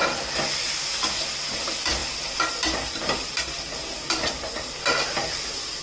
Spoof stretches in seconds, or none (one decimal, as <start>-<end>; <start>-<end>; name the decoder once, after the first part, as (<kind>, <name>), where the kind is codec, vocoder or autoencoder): none